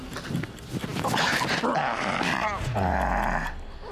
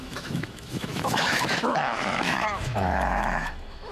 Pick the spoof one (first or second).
second